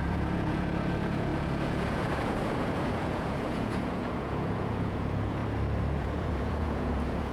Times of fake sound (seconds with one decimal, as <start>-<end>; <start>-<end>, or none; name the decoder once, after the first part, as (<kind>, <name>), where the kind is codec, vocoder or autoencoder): 0.0-5.4 (vocoder, Vocos); 6.0-7.3